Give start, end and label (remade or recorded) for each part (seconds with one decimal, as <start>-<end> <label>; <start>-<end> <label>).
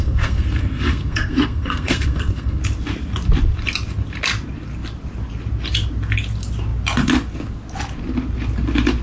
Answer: 0.0-2.6 remade; 2.6-9.0 recorded